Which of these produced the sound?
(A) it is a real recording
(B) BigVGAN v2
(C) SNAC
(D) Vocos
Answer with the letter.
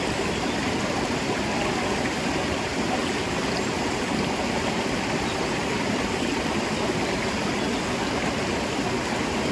A